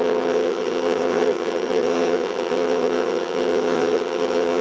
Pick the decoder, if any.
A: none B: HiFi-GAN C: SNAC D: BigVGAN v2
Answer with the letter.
B